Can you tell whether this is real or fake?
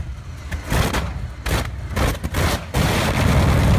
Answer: real